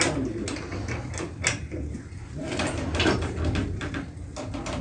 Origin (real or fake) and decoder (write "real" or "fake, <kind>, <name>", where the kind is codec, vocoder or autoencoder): real